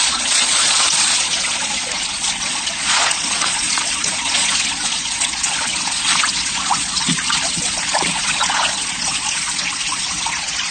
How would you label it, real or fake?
fake